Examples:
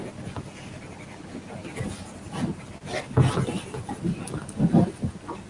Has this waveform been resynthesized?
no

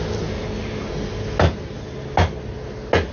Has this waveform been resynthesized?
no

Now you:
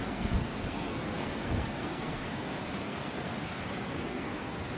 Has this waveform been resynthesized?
yes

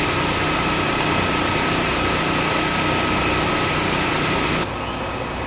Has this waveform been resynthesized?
no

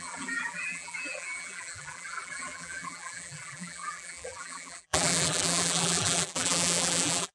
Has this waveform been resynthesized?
yes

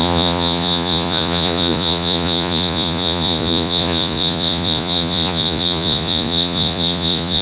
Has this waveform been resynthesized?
yes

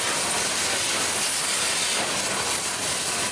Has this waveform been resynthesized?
no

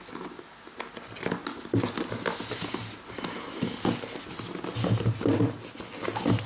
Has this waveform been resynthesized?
no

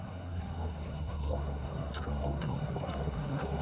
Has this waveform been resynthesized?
yes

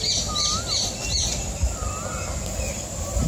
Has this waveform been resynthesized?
no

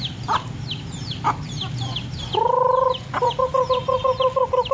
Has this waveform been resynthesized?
no